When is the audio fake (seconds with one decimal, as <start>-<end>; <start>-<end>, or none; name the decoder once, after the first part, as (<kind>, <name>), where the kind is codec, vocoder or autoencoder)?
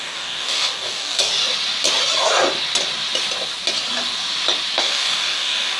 0.0-1.3 (codec, DAC); 4.8-5.8